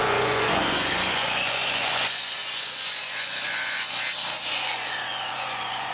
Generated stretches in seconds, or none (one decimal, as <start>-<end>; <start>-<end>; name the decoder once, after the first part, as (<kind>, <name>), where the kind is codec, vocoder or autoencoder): 0.0-4.0 (vocoder, Vocos); 4.5-5.9